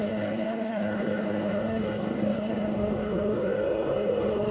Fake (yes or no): yes